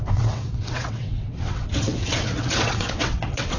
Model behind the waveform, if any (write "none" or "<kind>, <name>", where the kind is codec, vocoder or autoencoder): vocoder, WaveNeXt